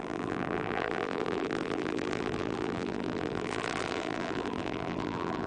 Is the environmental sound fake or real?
fake